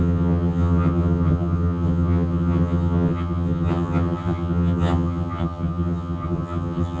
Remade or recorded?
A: remade